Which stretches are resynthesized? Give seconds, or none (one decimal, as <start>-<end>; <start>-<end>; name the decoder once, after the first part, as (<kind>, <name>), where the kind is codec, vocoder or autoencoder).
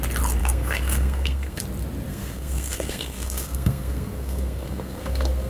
0.4-1.6 (codec, SNAC); 2.1-5.5